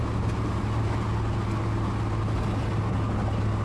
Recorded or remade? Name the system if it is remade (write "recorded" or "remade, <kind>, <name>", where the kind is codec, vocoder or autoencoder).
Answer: recorded